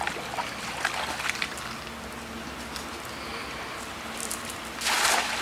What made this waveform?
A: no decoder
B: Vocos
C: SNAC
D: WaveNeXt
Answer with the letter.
A